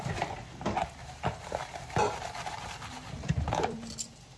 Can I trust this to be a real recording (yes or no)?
yes